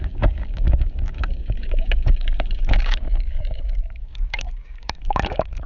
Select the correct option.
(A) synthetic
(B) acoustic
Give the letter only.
A